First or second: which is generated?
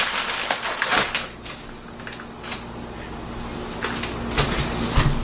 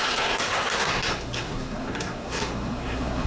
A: second